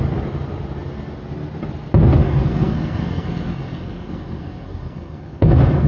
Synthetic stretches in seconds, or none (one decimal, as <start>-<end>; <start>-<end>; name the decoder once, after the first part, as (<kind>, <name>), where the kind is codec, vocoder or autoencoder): 2.2-5.9 (codec, SNAC)